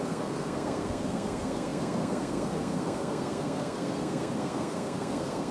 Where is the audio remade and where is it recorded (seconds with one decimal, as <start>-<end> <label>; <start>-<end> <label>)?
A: 0.0-5.5 remade